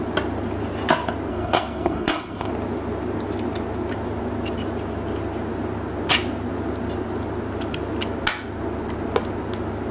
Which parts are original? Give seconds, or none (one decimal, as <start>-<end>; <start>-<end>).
0.0-1.3; 2.5-9.9